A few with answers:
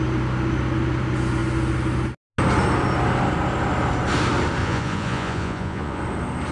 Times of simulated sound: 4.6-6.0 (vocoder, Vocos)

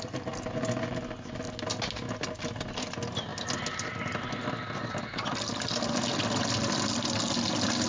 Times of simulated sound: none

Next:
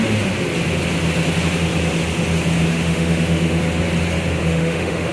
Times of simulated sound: 2.7-3.6 (autoencoder, DAC-VAE); 4.4-5.1

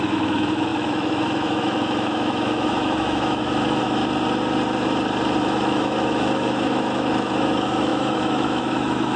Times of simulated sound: 0.0-4.0 (autoencoder, DAC-VAE); 5.4-9.2

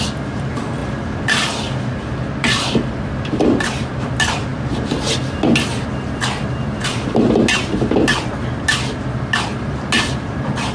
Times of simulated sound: 0.8-4.1 (vocoder, BigVGAN v2)

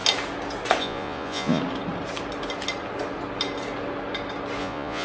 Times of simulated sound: 0.8-1.6 (vocoder, Vocos); 4.6-5.0

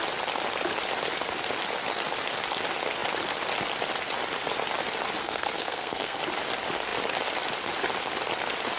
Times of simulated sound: 5.2-6.2 (codec, SNAC)

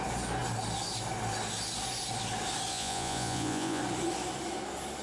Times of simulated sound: 2.7-3.8 (vocoder, Vocos)